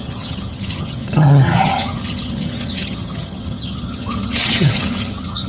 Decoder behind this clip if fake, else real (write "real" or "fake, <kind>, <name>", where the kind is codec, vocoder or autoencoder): fake, vocoder, HiFi-GAN